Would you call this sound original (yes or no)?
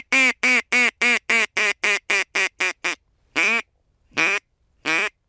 yes